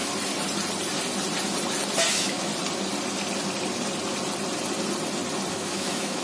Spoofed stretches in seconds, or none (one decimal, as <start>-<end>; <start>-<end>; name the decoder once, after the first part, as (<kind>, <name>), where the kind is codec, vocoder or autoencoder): 2.1-2.5 (autoencoder, DAC-VAE); 5.5-6.2